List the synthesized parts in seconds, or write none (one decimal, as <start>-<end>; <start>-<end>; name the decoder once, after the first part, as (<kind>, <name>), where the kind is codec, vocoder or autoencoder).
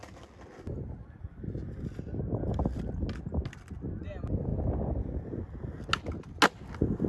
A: none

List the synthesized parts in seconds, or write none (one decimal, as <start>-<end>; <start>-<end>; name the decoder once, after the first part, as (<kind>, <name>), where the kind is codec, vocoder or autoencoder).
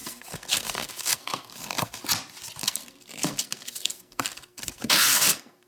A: 0.0-2.0 (codec, SNAC); 2.6-5.7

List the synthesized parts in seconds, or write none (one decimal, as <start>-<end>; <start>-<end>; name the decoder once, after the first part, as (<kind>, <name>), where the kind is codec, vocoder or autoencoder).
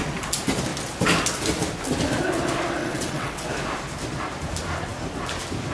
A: 2.8-3.5 (vocoder, WaveNeXt)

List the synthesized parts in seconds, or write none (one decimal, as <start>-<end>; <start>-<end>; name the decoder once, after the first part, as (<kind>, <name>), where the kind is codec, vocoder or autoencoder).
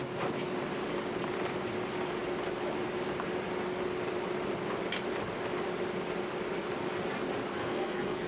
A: 7.5-8.3 (codec, SNAC)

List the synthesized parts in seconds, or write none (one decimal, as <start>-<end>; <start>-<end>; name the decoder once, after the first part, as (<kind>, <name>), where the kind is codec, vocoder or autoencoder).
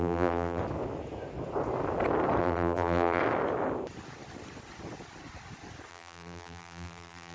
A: 0.0-0.6 (vocoder, BigVGAN v2); 2.4-3.2; 5.9-7.3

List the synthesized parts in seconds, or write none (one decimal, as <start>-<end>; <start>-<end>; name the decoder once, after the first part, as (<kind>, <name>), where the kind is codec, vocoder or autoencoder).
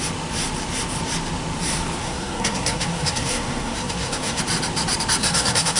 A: 2.0-4.4 (codec, SNAC); 5.2-5.8